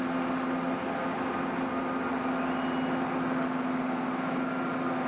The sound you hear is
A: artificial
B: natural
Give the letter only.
B